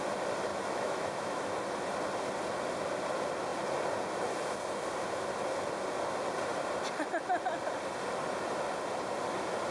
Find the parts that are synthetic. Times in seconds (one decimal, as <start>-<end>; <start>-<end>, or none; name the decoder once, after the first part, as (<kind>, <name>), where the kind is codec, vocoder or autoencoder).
0.5-1.4 (autoencoder, DAC-VAE)